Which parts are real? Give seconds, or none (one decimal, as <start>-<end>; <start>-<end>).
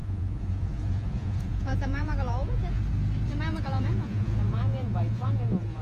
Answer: 2.8-3.5